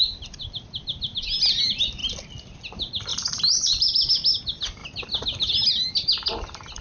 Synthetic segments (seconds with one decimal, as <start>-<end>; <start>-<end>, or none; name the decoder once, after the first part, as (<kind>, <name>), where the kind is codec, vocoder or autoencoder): 3.1-4.1 (vocoder, BigVGAN v2)